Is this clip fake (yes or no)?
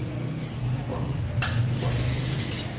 no